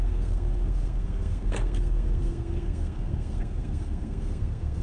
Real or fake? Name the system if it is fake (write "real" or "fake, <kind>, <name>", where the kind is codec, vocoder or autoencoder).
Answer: fake, codec, SNAC